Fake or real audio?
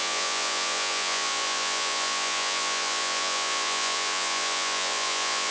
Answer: fake